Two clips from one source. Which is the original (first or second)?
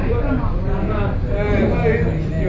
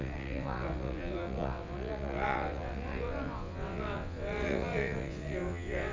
first